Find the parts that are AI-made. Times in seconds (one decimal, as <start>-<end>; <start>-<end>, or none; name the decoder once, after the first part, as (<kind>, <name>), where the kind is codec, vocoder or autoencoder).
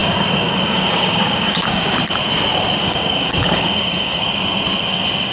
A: 0.0-1.9 (codec, DAC); 2.8-4.2